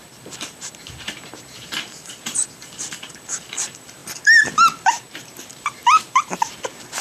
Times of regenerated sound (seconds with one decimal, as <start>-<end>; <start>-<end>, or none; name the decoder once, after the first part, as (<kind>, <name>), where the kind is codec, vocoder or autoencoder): 0.0-7.0 (vocoder, BigVGAN v2)